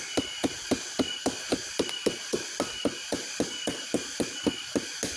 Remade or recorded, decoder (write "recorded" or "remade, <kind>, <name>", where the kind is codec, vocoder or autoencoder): recorded